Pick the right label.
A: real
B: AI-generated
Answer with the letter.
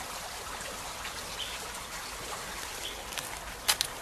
A